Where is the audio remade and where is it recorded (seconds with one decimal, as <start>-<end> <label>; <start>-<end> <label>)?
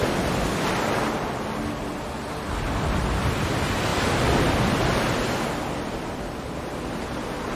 0.0-3.9 recorded; 3.9-5.4 remade; 5.4-7.5 recorded